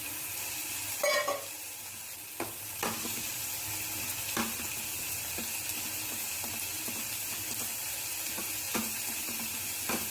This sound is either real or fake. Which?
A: real